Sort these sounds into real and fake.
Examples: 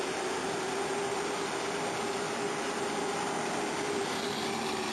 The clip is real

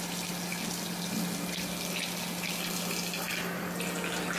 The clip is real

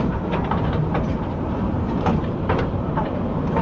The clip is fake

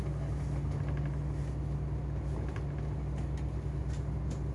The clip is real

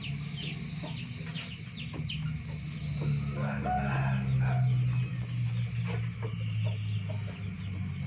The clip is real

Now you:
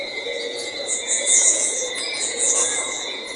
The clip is fake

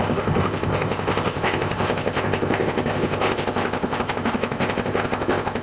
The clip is fake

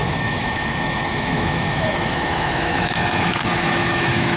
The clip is fake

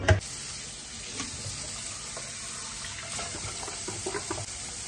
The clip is real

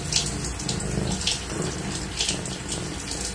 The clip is real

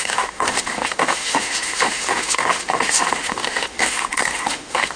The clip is fake